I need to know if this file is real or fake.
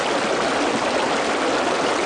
real